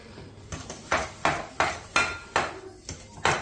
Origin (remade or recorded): recorded